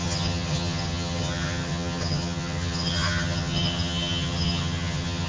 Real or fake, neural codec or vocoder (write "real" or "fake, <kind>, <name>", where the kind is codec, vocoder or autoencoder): fake, vocoder, HiFi-GAN